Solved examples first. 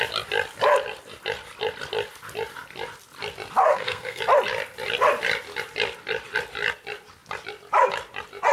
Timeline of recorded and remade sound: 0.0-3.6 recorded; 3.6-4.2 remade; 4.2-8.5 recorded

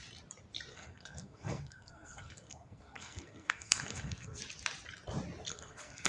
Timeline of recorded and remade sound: 0.0-0.7 recorded; 0.7-4.4 remade; 4.4-5.5 recorded; 5.5-6.1 remade

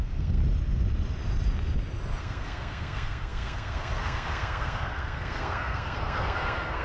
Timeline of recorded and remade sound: 0.0-0.4 remade; 0.4-2.2 recorded; 2.2-6.8 remade

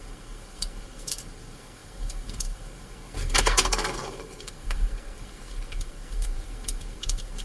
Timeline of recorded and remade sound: 0.0-7.4 remade

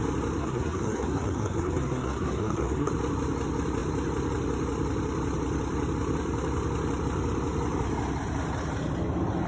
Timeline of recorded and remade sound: 0.0-0.4 recorded; 0.4-2.9 remade; 2.9-9.5 recorded